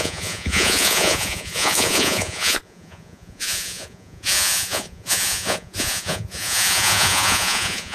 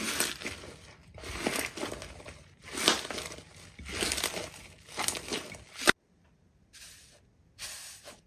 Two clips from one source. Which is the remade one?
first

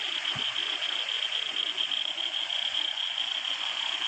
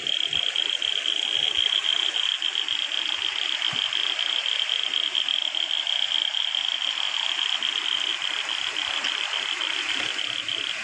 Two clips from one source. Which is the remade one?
first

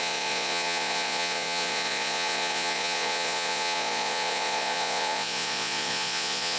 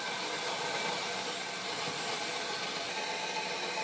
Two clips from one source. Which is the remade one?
first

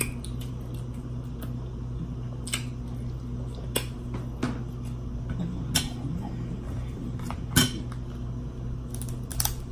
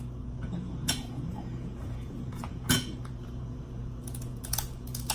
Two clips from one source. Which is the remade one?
second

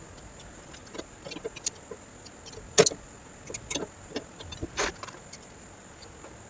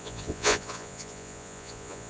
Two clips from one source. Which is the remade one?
second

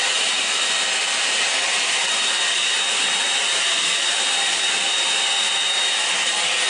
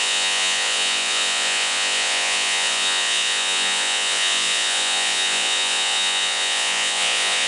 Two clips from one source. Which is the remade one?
second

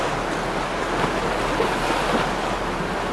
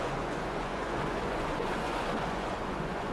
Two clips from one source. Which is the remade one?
second